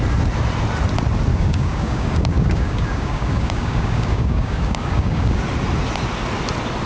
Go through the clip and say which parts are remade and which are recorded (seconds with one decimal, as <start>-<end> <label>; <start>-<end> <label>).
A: 0.0-1.3 recorded; 1.3-5.4 remade; 5.4-6.9 recorded